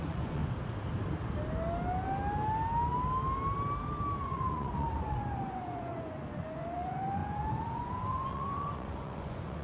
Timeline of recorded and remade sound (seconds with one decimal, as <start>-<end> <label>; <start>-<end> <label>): 0.0-0.4 remade; 0.4-4.2 recorded; 4.2-9.6 remade